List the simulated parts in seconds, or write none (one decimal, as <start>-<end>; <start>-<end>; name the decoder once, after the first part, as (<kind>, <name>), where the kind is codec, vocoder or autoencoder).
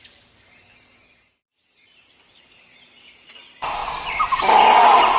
0.0-3.8 (vocoder, BigVGAN v2); 4.4-5.2